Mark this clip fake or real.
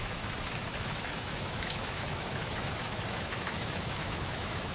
fake